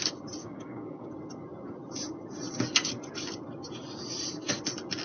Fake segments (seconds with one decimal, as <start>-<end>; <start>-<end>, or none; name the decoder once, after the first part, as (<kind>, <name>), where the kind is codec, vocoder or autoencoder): 0.4-1.1 (codec, DAC)